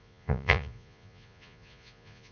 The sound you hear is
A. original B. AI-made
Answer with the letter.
B